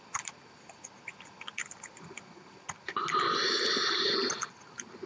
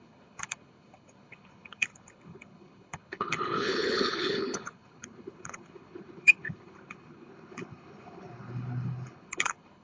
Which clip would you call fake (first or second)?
second